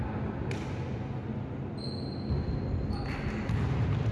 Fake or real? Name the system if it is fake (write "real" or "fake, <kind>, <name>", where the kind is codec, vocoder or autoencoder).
real